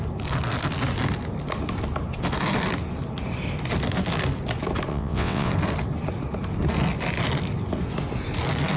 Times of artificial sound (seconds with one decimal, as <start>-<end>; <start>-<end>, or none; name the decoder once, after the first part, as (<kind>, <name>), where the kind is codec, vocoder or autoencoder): 4.9-5.5 (vocoder, WaveNeXt)